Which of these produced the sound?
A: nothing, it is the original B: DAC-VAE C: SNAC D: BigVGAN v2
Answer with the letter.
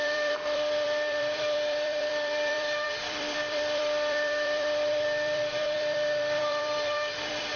D